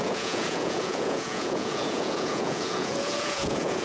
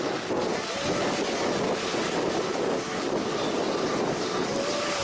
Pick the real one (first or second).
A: second